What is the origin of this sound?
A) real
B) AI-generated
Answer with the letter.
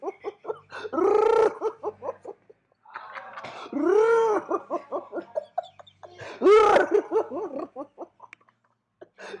A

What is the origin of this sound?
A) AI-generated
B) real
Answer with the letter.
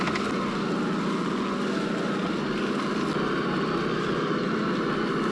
B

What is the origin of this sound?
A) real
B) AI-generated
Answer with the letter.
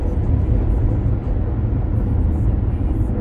A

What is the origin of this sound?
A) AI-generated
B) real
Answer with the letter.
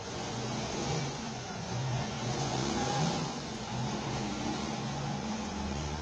A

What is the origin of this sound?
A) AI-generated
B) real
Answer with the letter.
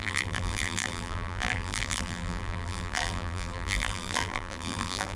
A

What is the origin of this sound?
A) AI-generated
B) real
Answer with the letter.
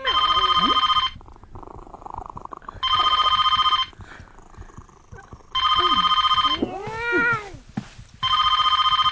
B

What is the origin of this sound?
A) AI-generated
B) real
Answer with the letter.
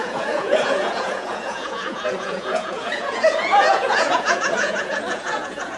A